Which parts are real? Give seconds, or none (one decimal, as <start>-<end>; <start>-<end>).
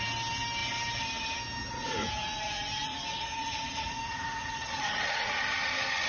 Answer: 0.0-1.7; 5.4-6.1